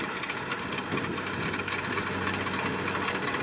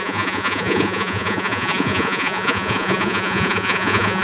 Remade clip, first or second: second